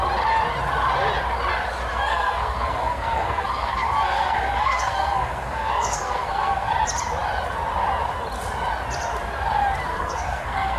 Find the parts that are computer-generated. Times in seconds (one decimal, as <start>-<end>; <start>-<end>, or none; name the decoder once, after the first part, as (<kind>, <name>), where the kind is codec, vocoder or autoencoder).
1.9-6.7 (codec, SNAC); 9.9-10.8